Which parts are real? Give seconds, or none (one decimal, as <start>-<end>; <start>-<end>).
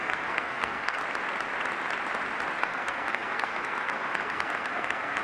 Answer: 1.0-2.6